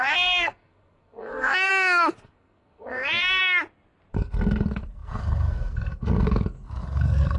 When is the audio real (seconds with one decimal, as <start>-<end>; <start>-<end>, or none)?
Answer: 1.7-2.2; 3.4-4.1